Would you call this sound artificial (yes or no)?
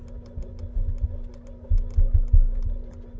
no